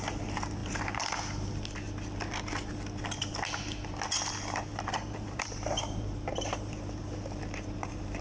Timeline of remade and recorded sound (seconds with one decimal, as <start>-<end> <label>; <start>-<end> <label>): 0.0-0.6 recorded; 0.6-1.1 remade; 1.1-4.7 recorded; 4.7-8.2 remade